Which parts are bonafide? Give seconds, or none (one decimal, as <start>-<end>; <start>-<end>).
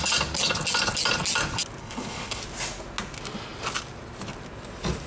0.0-1.8; 2.4-5.1